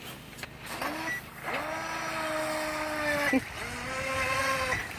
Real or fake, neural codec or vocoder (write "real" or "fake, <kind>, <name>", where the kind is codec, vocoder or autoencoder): real